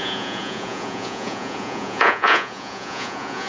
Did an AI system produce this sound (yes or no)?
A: yes